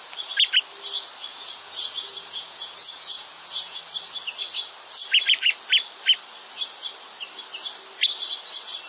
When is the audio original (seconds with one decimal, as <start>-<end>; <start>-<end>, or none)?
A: 0.0-1.3; 3.8-8.9